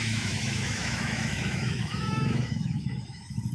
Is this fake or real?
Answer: fake